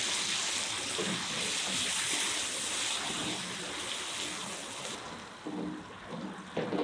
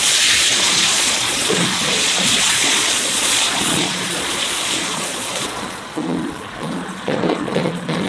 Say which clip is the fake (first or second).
second